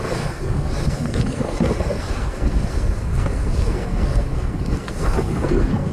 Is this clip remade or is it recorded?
remade